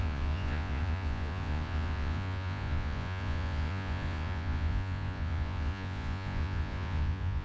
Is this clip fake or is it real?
fake